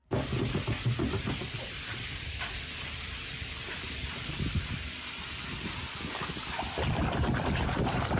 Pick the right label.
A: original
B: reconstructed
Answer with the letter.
B